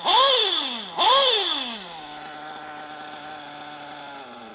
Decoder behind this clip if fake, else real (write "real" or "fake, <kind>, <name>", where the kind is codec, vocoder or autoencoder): real